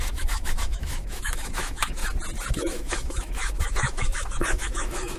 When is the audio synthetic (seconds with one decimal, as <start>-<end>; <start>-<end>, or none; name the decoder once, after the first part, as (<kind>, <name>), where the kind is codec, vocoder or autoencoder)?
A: 0.0-2.0 (autoencoder, DAC-VAE); 2.5-5.2